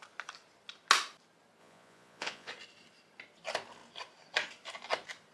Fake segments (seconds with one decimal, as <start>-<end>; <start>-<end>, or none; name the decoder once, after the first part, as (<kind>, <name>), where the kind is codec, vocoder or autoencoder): 1.6-2.5 (vocoder, Vocos)